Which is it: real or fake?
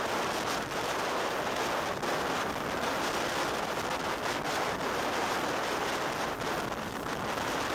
real